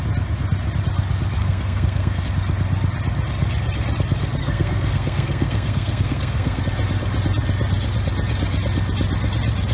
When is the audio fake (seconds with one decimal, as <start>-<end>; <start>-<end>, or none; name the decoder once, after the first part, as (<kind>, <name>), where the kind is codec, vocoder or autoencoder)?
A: 1.4-2.2 (codec, SNAC); 4.4-6.6